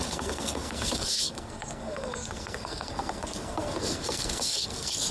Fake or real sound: fake